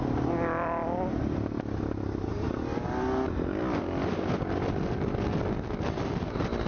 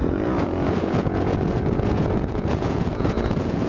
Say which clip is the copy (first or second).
second